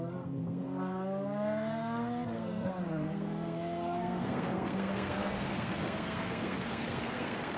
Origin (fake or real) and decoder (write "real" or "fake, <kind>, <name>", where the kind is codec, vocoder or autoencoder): fake, codec, SNAC